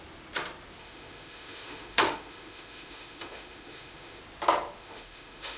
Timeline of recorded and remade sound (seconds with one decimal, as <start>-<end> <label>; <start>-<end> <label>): 0.0-0.8 recorded; 0.8-4.2 remade; 4.2-4.8 recorded; 4.8-5.6 remade